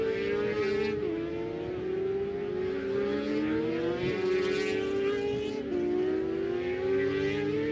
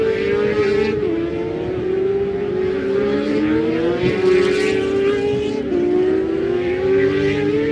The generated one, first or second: second